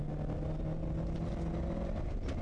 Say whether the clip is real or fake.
real